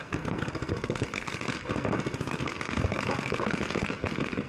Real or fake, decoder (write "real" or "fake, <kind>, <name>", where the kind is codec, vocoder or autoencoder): fake, codec, SNAC